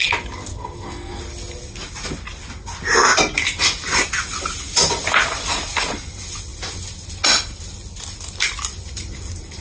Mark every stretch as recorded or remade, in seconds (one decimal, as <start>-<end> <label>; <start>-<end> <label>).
0.0-0.5 recorded; 0.5-1.2 remade; 1.2-9.6 recorded